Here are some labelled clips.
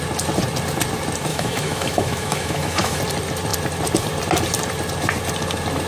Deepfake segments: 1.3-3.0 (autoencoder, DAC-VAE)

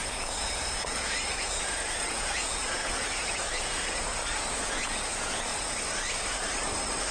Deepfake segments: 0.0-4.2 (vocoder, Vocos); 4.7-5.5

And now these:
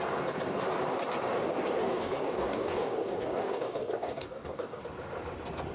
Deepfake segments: 1.8-4.8 (codec, DAC)

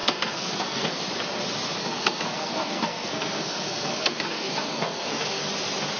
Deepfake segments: 0.0-1.0 (codec, SNAC); 1.8-5.4

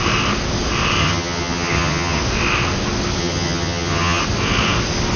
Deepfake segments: 1.0-2.2 (vocoder, HiFi-GAN); 3.2-4.2

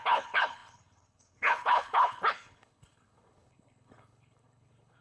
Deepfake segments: 0.0-5.0 (codec, HILCodec)

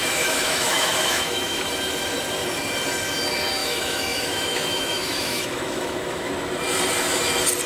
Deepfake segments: 0.0-1.7 (autoencoder, DAC-VAE); 3.6-6.3

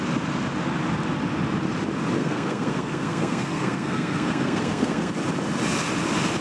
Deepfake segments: 2.2-5.1 (codec, SNAC)